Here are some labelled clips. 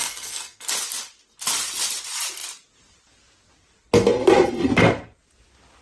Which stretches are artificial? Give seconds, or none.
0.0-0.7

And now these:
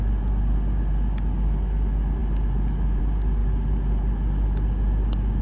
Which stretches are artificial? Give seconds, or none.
none